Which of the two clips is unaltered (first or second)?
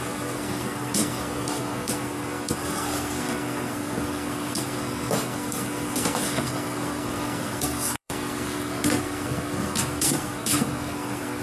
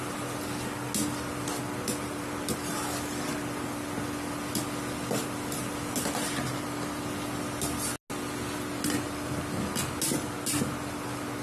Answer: second